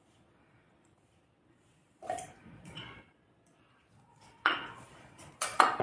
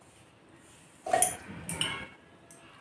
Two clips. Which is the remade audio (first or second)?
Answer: first